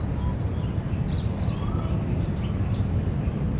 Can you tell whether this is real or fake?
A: real